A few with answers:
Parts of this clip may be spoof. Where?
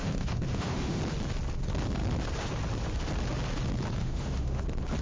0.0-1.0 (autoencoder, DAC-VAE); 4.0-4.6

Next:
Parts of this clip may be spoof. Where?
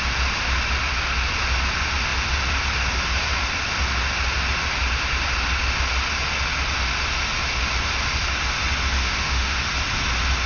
9.0-9.6 (autoencoder, DAC-VAE)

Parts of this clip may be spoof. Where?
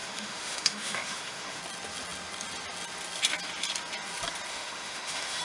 0.0-1.6 (autoencoder, DAC-VAE); 4.5-5.4